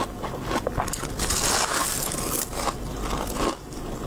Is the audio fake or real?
real